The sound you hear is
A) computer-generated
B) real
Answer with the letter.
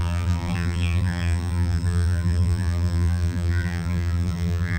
A